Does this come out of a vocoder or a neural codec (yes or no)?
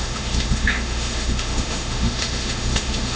yes